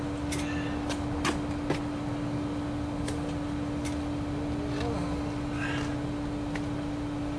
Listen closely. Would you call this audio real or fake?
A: real